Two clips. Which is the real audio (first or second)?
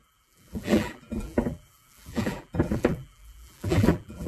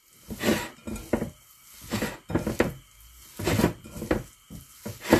second